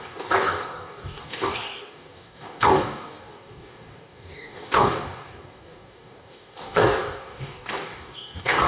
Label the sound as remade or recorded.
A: remade